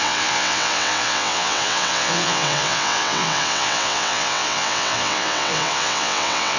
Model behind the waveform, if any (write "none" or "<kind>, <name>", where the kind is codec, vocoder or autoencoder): vocoder, WaveNeXt